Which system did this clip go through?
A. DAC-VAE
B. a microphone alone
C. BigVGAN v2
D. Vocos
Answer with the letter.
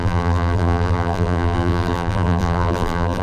C